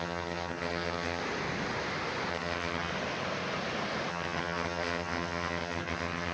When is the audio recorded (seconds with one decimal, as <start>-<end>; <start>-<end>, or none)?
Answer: 1.2-2.3; 2.9-4.1